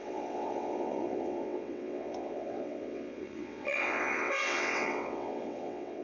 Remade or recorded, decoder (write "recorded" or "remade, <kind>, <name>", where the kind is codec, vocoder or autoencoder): remade, vocoder, WaveNeXt